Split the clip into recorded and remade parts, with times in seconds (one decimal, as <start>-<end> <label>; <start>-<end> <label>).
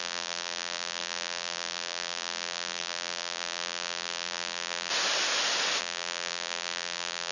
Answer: 0.0-4.9 remade; 4.9-5.8 recorded; 5.8-7.3 remade